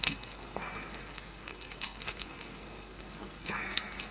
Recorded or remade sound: remade